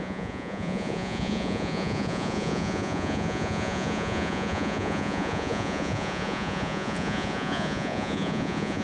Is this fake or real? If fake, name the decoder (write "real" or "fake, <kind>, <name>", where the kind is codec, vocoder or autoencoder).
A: fake, vocoder, Vocos